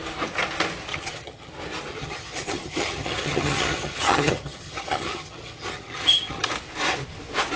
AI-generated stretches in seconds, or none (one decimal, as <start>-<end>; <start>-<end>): 0.9-1.5; 1.9-6.5